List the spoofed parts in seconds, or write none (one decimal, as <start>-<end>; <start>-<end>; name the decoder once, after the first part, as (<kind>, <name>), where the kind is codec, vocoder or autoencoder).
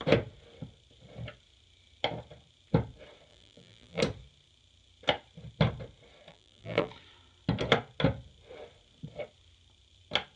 3.3-4.0 (vocoder, BigVGAN v2); 6.3-6.9